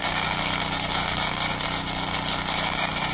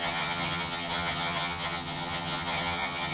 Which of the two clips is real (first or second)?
first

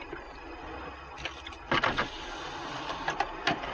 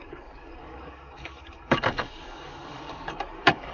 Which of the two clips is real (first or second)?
first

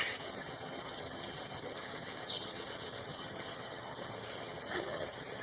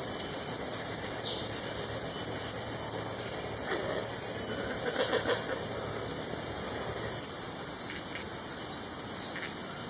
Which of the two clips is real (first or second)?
second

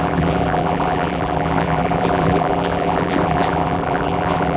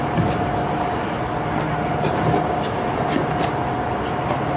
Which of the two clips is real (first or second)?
second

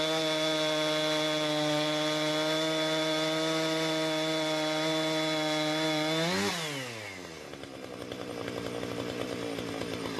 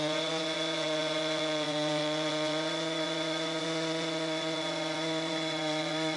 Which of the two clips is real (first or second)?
first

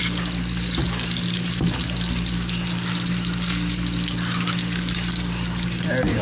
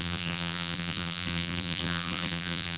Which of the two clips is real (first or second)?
first